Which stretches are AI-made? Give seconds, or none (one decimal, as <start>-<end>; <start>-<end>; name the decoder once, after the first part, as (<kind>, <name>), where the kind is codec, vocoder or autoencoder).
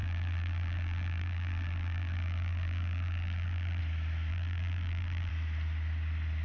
0.0-3.8 (vocoder, BigVGAN v2); 4.3-5.3